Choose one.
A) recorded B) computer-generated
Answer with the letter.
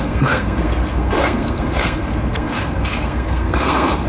B